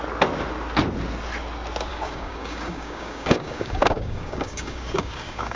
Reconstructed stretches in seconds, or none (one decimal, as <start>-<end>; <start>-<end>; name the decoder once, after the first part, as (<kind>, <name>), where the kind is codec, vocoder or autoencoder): 1.9-5.6 (codec, DAC)